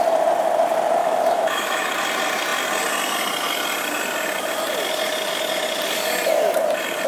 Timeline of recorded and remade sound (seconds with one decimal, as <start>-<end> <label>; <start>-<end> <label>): 0.0-1.0 recorded; 1.0-1.9 remade; 1.9-7.1 recorded